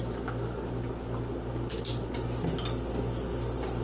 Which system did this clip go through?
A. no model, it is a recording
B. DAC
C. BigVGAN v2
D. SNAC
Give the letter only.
A